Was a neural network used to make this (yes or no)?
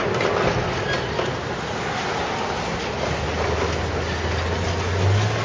no